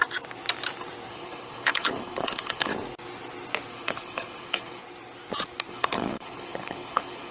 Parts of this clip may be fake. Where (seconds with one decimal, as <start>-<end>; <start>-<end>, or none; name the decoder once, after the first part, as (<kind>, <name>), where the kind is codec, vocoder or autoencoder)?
1.1-2.7 (codec, HILCodec); 3.7-4.8; 5.7-7.3